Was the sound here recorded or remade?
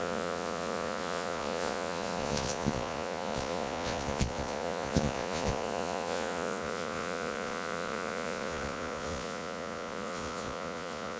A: remade